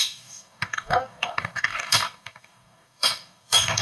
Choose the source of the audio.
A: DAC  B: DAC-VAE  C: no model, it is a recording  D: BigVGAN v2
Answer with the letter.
A